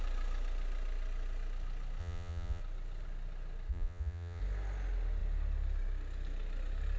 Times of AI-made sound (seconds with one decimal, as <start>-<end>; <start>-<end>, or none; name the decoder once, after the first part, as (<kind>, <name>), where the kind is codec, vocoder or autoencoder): 2.0-2.6 (vocoder, Vocos); 3.7-4.4